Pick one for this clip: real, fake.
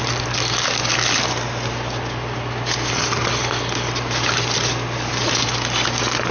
real